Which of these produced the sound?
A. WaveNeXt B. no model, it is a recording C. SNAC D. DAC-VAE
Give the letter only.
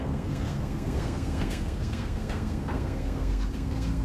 C